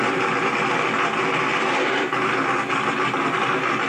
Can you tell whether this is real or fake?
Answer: real